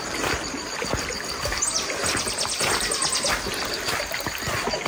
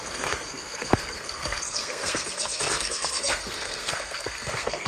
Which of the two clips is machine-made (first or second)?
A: second